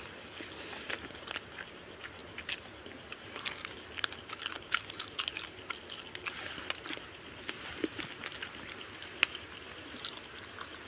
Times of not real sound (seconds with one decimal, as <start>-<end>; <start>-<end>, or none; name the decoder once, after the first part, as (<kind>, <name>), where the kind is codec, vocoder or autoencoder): none